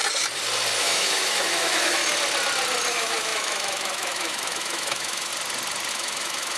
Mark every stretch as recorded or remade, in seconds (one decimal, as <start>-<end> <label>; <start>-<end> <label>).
0.0-0.8 recorded; 0.8-2.0 remade; 2.0-2.9 recorded; 2.9-5.3 remade; 5.3-5.9 recorded; 5.9-6.6 remade